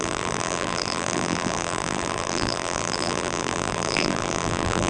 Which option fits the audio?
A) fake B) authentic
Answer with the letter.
A